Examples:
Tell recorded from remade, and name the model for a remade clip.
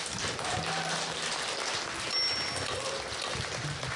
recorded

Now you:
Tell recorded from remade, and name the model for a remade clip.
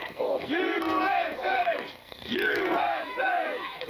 remade, codec, SNAC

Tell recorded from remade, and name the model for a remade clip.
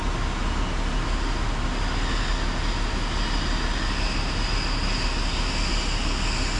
recorded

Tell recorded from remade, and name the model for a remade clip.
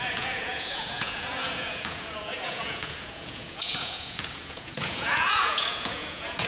remade, vocoder, Vocos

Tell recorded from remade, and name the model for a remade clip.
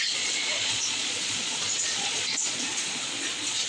remade, vocoder, Vocos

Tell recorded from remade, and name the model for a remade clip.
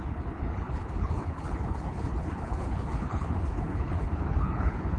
remade, codec, HILCodec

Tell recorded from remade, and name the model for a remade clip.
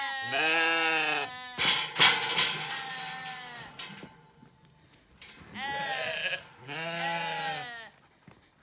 recorded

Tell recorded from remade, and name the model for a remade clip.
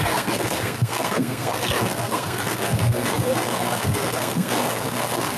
remade, codec, SNAC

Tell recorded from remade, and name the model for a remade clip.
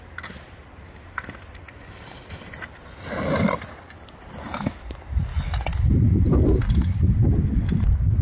recorded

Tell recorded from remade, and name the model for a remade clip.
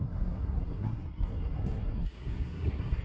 remade, codec, SNAC